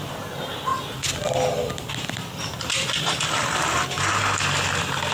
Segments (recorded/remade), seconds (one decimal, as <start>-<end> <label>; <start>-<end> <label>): 0.0-5.1 recorded